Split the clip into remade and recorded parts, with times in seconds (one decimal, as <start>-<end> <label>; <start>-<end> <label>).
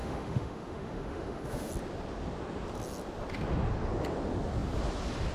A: 0.0-1.7 remade; 1.7-5.3 recorded